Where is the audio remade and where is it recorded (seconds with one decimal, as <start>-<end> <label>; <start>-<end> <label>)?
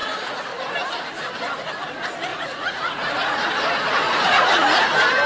0.0-2.3 recorded; 2.3-3.5 remade; 3.5-4.0 recorded; 4.0-4.8 remade; 4.8-5.3 recorded